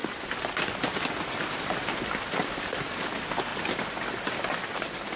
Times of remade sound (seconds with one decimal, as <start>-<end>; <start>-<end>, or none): 0.0-1.9